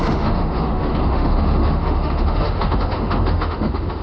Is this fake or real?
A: fake